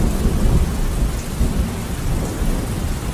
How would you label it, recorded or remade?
recorded